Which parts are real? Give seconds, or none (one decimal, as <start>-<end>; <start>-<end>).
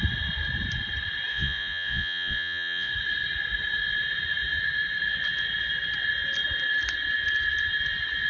0.0-1.3; 2.9-8.3